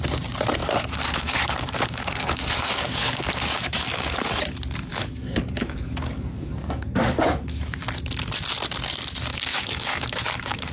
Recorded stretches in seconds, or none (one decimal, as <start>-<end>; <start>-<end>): 0.0-0.6; 4.4-4.9; 7.8-9.3